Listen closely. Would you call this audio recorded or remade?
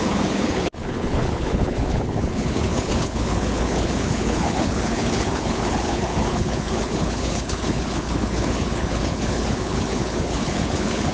remade